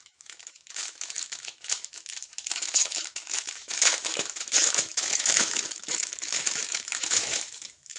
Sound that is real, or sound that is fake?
fake